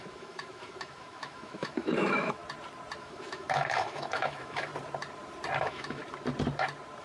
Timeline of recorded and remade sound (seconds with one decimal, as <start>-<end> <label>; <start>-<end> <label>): 0.0-2.4 remade; 2.4-3.0 recorded; 3.0-4.7 remade; 4.7-5.6 recorded; 5.6-6.0 remade; 6.0-7.0 recorded